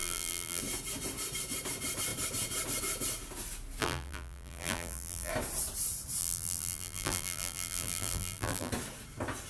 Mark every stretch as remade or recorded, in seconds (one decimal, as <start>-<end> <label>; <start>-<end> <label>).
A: 0.0-0.6 remade; 0.6-3.8 recorded; 3.8-5.3 remade; 5.3-6.2 recorded; 6.2-8.7 remade; 8.7-9.5 recorded